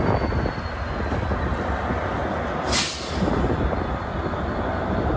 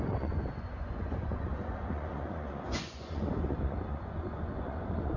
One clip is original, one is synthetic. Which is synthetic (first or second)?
second